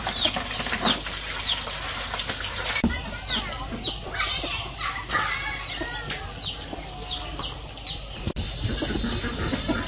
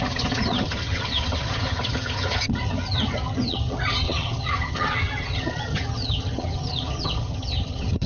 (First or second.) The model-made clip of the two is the second